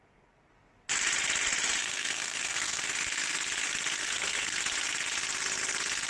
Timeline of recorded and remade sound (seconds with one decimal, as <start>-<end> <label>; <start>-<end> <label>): 0.0-1.8 recorded; 1.8-2.8 remade; 2.8-4.0 recorded; 4.0-4.6 remade; 4.6-6.1 recorded

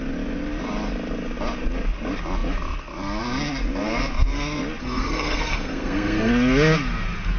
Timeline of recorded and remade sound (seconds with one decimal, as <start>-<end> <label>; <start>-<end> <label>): 0.0-4.8 recorded; 4.8-6.3 remade; 6.3-7.4 recorded

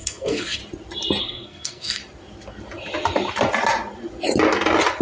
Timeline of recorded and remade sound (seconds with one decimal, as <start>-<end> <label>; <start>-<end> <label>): 0.0-0.6 remade; 0.6-1.2 recorded; 1.2-2.0 remade; 2.0-5.0 recorded

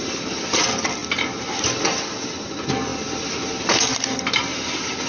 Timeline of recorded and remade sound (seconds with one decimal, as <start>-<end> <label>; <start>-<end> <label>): 0.0-5.1 recorded

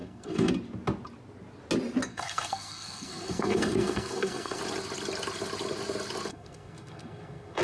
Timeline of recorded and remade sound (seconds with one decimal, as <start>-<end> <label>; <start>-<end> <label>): 0.0-0.5 remade; 0.5-2.1 recorded; 2.1-4.6 remade; 4.6-6.3 recorded; 6.3-7.6 remade

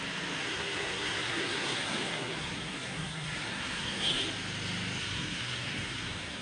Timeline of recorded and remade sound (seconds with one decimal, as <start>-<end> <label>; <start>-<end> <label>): 0.0-0.4 recorded; 0.4-4.2 remade; 4.2-5.0 recorded; 5.0-6.4 remade

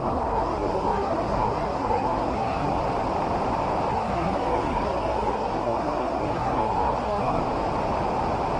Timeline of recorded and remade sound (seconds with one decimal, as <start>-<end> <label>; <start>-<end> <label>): 0.0-2.8 remade; 2.8-3.9 recorded; 3.9-7.4 remade; 7.4-8.6 recorded

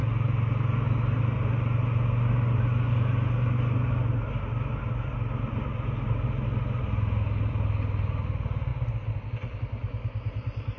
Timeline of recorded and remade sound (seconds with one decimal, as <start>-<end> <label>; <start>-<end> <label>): 0.0-10.8 recorded